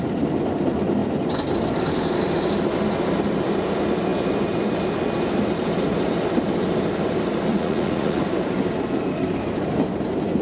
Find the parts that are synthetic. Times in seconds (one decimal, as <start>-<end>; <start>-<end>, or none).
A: 7.5-8.2

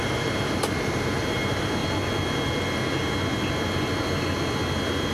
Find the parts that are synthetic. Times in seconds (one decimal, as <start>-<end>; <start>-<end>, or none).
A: 0.0-1.8

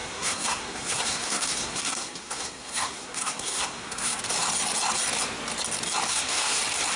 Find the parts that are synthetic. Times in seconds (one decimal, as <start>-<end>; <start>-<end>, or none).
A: 0.0-4.2; 6.1-6.6

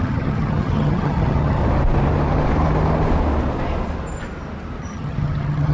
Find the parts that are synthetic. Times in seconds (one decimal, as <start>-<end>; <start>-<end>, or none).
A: 0.0-1.6; 4.8-5.7

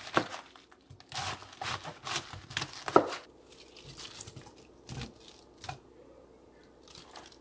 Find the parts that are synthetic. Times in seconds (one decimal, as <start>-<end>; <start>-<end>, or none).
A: none